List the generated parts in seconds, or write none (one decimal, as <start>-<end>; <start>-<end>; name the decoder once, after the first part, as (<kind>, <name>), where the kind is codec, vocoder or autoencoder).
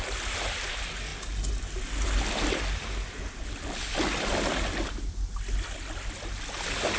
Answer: none